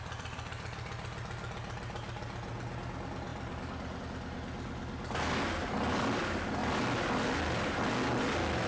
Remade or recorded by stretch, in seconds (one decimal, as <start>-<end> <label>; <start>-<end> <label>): 0.0-3.3 recorded; 3.3-4.0 remade; 4.0-6.6 recorded; 6.6-7.3 remade; 7.3-8.7 recorded